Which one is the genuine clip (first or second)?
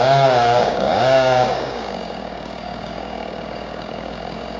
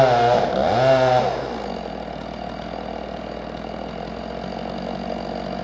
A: second